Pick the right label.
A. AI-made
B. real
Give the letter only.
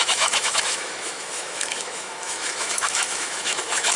A